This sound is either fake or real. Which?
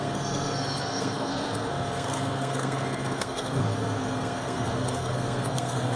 fake